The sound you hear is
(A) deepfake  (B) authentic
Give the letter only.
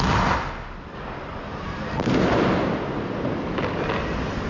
B